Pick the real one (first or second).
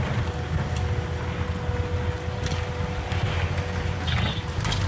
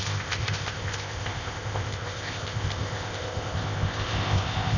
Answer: first